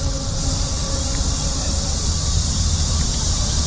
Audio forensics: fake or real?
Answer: fake